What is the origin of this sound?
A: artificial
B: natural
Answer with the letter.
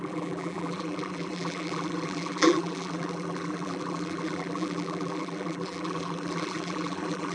A